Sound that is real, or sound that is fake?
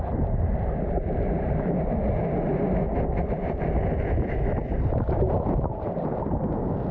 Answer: real